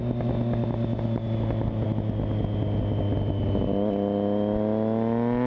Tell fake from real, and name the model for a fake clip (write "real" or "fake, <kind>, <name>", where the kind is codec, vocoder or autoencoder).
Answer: real